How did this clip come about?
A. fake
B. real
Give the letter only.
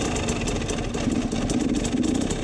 B